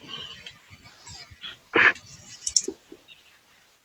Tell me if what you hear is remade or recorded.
recorded